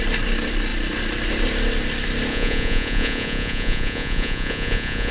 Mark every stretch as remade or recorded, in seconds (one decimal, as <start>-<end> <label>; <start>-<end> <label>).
0.0-2.3 recorded; 2.3-5.1 remade